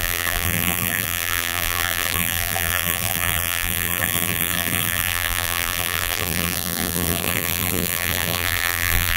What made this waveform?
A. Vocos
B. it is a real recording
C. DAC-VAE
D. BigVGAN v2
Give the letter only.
D